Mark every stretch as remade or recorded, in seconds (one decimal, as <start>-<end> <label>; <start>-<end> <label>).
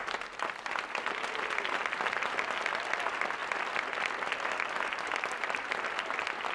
0.0-6.5 recorded